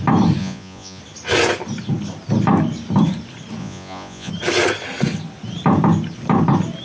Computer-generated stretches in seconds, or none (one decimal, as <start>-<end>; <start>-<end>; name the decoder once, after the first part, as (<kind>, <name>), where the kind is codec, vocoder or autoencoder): 0.4-1.0 (vocoder, Vocos); 3.6-4.3